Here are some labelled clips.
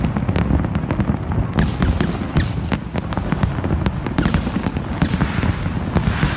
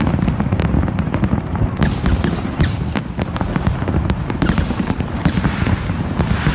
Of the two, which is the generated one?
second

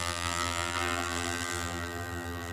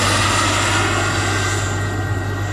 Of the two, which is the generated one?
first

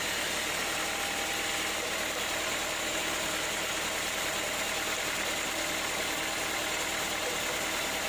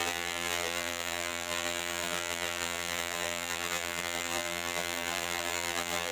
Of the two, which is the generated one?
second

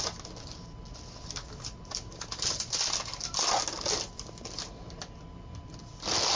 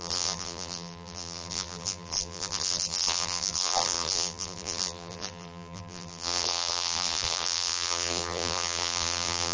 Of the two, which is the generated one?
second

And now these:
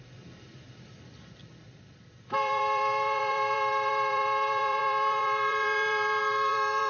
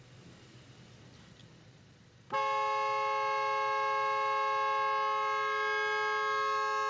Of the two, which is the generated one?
first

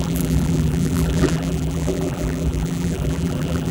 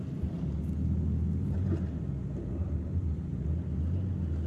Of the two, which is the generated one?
first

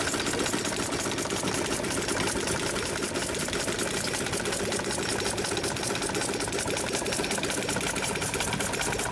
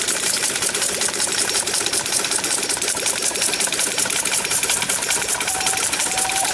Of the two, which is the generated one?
second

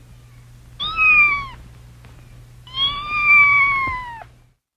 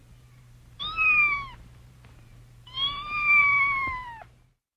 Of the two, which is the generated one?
second